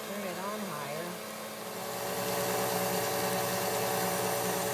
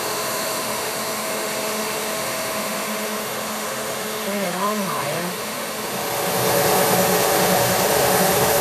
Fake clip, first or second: second